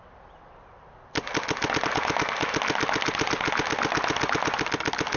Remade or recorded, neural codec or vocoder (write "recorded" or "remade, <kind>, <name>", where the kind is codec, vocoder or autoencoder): recorded